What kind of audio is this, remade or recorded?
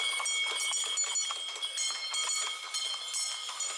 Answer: recorded